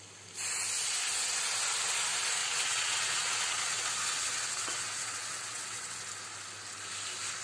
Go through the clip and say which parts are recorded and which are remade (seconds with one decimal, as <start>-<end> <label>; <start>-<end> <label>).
0.0-2.4 recorded; 2.4-6.0 remade; 6.0-7.4 recorded